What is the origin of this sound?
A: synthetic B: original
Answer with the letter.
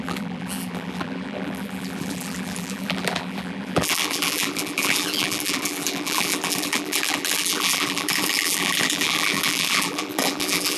A